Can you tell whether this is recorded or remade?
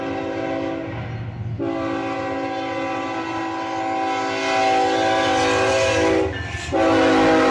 recorded